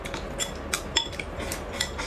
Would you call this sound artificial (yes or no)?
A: no